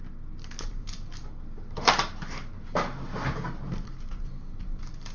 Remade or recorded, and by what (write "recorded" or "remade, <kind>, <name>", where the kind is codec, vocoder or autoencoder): recorded